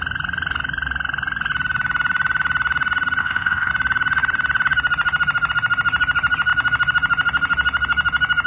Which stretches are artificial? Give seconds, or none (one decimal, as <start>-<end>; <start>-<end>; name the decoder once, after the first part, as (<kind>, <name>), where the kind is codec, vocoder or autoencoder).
3.2-3.7 (codec, ZipCodec)